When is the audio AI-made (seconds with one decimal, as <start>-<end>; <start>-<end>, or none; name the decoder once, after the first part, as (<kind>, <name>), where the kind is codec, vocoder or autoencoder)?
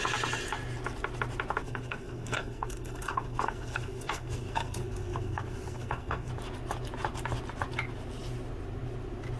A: 1.6-6.3 (codec, SNAC)